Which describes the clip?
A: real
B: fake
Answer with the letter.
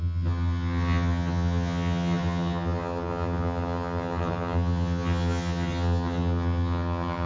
B